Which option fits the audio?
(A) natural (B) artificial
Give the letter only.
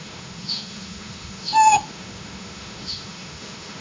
B